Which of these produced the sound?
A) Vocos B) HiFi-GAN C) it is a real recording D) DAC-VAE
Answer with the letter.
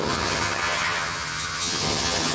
B